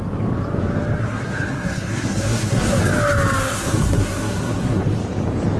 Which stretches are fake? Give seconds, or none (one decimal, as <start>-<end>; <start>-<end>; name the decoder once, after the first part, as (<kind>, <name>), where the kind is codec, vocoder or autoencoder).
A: 1.0-2.8 (codec, SNAC); 3.5-4.8